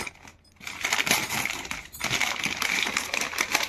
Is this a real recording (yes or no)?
yes